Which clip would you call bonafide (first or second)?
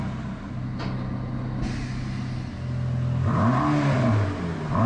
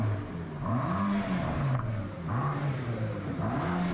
first